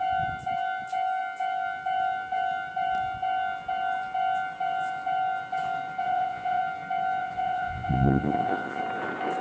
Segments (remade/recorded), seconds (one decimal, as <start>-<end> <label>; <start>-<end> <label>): 0.0-6.0 recorded; 6.0-6.6 remade; 6.6-7.2 recorded; 7.2-8.8 remade; 8.8-9.4 recorded